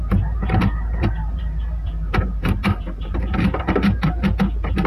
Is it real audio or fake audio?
real